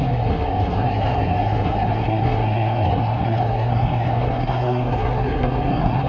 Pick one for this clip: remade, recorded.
remade